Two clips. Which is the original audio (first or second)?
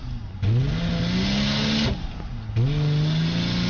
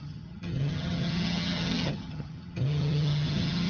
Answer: first